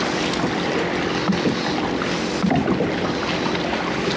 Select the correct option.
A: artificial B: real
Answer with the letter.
B